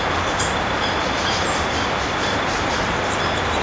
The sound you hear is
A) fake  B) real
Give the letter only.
A